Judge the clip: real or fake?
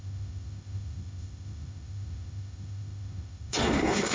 fake